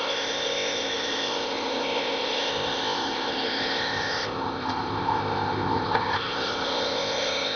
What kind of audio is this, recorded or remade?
remade